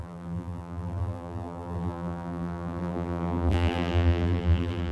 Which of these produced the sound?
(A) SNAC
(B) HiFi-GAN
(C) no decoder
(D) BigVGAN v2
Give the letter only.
D